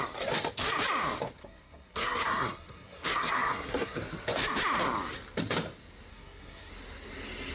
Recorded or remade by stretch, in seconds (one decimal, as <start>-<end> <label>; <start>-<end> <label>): 0.0-1.4 recorded; 1.4-4.0 remade; 4.0-6.1 recorded; 6.1-6.7 remade; 6.7-7.5 recorded